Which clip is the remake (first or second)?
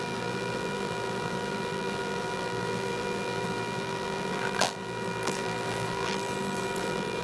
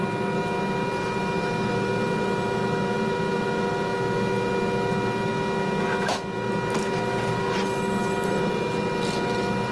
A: first